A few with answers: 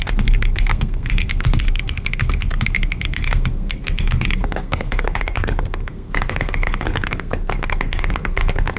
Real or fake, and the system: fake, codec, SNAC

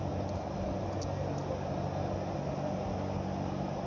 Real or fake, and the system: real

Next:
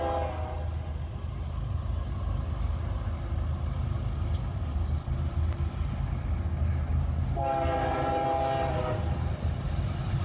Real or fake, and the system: real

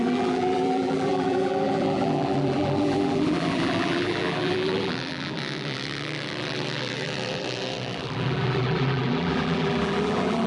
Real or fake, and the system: fake, vocoder, BigVGAN v2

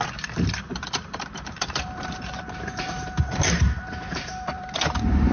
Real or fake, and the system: fake, vocoder, BigVGAN v2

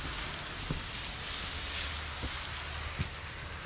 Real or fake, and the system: real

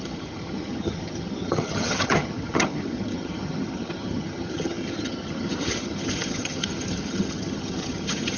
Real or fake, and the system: fake, vocoder, HiFi-GAN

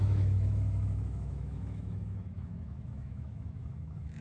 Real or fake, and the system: fake, autoencoder, DAC-VAE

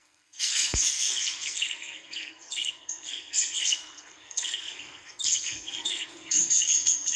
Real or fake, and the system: fake, codec, SNAC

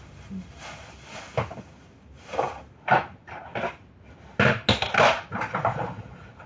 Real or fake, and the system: real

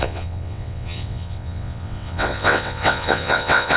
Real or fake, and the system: fake, vocoder, WaveNeXt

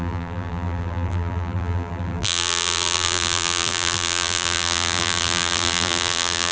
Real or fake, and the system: fake, vocoder, BigVGAN v2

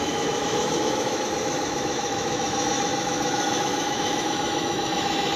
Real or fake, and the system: fake, autoencoder, DAC-VAE